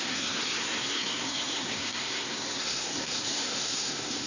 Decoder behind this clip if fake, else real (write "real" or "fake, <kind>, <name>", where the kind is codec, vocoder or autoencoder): fake, codec, SNAC